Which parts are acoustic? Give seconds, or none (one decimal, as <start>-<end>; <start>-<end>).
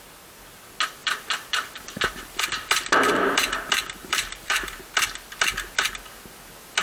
0.0-1.0; 2.4-4.0; 4.8-6.8